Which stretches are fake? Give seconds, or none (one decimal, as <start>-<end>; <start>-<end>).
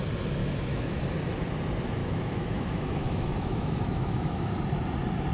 0.4-1.0; 2.0-4.5